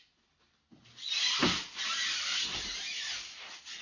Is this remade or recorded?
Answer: recorded